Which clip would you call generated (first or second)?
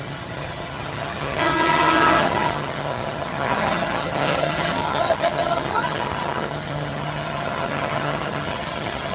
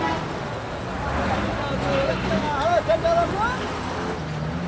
first